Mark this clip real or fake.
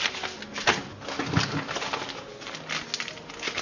real